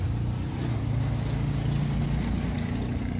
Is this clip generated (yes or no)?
no